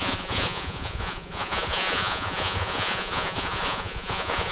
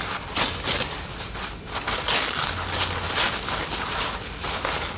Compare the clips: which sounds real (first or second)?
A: second